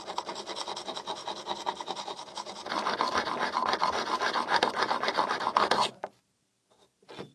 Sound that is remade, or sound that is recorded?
recorded